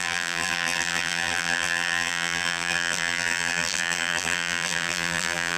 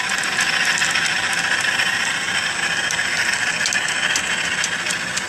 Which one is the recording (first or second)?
second